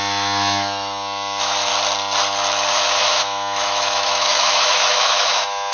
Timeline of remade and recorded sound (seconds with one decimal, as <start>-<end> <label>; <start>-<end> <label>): 0.0-1.7 remade; 1.7-2.7 recorded; 2.7-5.7 remade

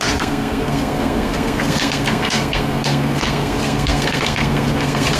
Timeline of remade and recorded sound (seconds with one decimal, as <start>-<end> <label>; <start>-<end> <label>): 0.0-5.2 remade

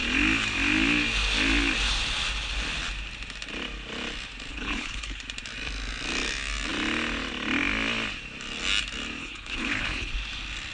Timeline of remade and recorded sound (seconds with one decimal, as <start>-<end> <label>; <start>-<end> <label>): 0.0-4.5 recorded; 4.5-5.2 remade; 5.2-9.2 recorded; 9.2-10.1 remade; 10.1-10.7 recorded

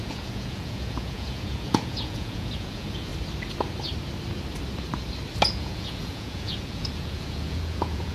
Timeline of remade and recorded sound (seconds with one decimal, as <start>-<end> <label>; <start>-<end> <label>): 0.0-3.1 remade; 3.1-5.5 recorded; 5.5-8.1 remade

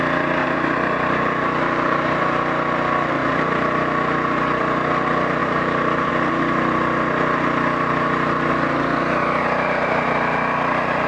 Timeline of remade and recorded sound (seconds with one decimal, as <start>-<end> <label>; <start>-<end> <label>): 0.0-0.4 recorded; 0.4-2.2 remade; 2.2-5.4 recorded; 5.4-6.1 remade; 6.1-11.1 recorded